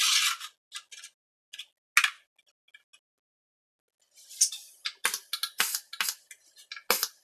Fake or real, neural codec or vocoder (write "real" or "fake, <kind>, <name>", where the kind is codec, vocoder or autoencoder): real